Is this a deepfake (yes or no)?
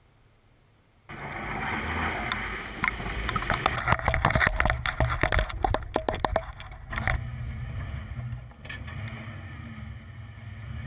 no